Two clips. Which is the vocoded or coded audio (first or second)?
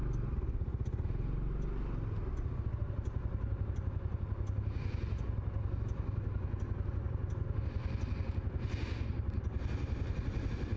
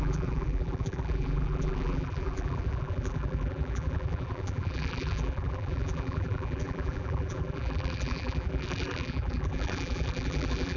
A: second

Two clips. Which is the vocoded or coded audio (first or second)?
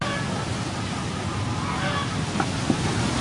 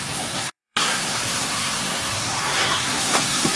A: second